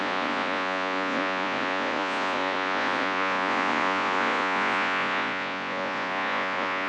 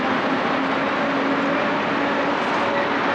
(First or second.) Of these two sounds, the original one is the second